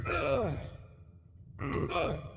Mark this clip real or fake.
fake